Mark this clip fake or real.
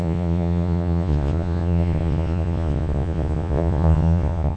fake